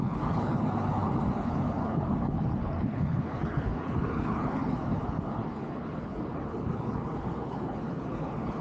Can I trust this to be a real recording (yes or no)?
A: no